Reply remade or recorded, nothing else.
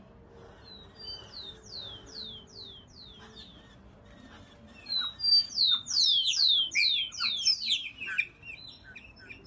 recorded